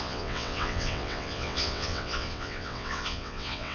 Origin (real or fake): fake